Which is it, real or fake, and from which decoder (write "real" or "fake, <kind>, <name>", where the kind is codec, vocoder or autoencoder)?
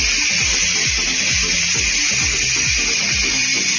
real